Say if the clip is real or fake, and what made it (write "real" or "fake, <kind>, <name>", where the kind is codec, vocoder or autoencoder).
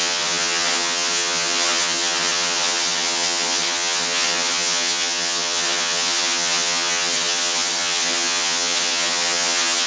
fake, vocoder, HiFi-GAN